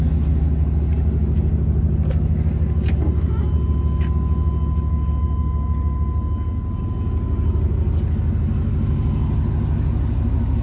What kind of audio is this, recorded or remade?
recorded